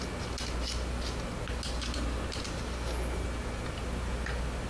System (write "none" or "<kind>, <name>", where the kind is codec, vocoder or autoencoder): none